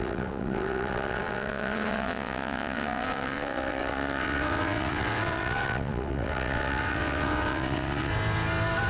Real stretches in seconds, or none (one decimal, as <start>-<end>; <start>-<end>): 8.1-8.9